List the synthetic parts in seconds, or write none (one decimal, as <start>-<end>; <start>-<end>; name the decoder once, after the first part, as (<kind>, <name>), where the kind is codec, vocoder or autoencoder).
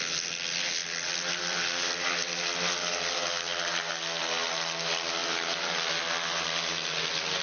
none